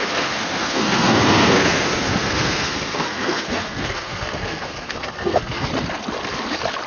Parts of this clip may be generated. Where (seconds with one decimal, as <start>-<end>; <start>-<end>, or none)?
0.0-5.7